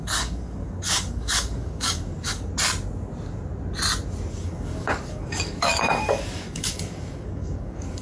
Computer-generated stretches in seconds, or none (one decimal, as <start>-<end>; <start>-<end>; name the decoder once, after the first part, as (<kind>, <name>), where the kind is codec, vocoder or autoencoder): 0.0-2.5 (codec, DAC); 4.3-8.0